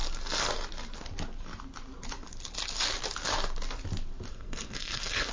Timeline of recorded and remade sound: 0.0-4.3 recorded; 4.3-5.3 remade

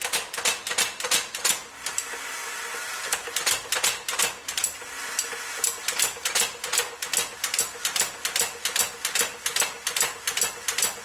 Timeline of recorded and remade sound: 0.0-11.0 recorded

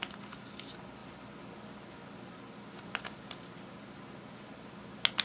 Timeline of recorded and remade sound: 0.0-5.2 recorded

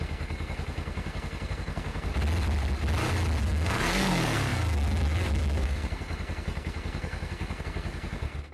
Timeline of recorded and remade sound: 0.0-2.1 remade; 2.1-3.4 recorded; 3.4-8.5 remade

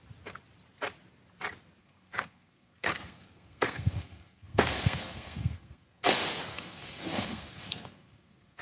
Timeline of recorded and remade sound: 0.0-1.8 recorded; 1.8-6.0 remade; 6.0-6.5 recorded; 6.5-8.6 remade

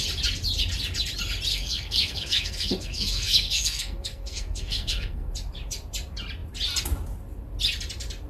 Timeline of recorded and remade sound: 0.0-1.5 recorded; 1.5-5.3 remade; 5.3-8.3 recorded

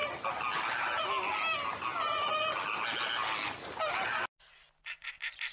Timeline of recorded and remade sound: 0.0-5.5 recorded